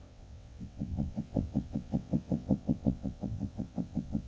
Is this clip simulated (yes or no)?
yes